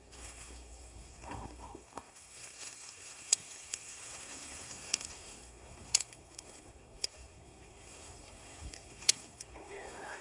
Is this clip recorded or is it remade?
remade